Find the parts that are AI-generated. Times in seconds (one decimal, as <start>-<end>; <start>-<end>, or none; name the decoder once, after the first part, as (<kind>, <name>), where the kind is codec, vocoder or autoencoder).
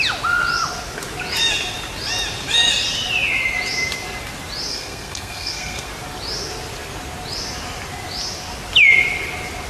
4.7-5.9 (codec, SNAC)